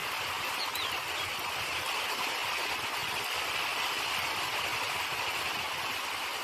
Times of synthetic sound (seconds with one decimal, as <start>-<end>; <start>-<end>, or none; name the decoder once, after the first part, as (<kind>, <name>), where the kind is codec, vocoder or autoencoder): none